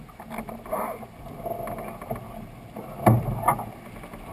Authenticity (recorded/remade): remade